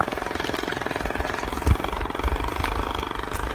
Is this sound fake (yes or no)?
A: no